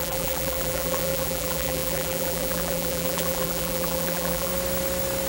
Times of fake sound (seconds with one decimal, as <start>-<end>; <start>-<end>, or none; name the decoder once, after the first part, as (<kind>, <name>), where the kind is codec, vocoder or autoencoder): 0.0-4.5 (vocoder, BigVGAN v2)